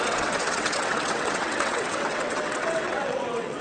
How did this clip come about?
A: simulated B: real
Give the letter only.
A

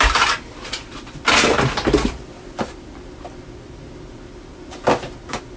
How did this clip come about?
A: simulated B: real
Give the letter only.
B